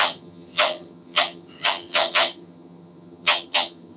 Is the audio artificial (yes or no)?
yes